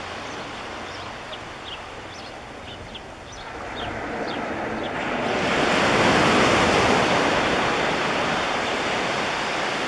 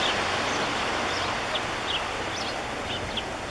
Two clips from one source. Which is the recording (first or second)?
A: second